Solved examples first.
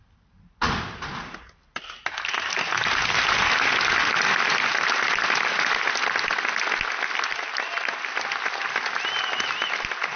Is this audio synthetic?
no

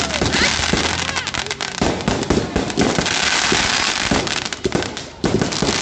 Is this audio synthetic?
no